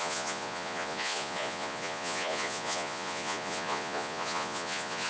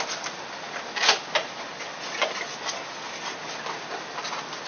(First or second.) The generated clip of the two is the first